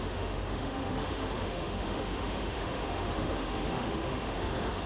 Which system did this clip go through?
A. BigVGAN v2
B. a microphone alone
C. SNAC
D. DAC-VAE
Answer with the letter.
D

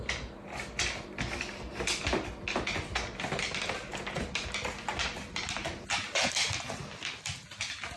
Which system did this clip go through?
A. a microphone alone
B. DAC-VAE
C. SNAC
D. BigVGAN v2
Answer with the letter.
A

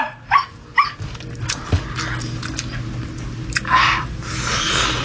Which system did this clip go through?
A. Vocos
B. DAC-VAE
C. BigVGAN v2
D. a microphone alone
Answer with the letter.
D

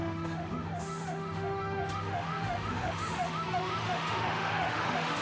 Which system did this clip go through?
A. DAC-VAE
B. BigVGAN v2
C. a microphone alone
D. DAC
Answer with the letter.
A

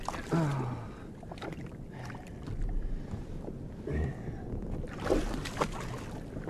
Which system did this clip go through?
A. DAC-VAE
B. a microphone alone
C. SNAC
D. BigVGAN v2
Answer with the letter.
B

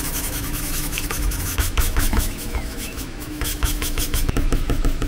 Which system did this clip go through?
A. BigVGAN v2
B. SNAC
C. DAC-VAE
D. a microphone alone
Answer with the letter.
C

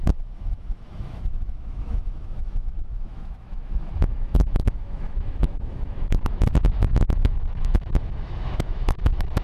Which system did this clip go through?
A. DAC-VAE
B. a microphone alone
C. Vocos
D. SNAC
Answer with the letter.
A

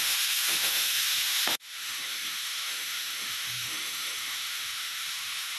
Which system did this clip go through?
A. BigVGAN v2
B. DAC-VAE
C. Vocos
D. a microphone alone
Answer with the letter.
B